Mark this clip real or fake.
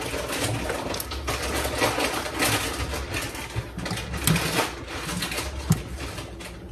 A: real